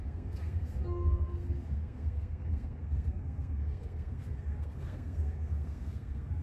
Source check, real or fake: fake